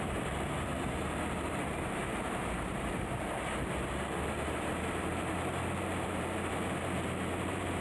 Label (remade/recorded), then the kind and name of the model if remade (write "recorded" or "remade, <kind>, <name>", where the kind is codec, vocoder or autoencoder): remade, vocoder, BigVGAN v2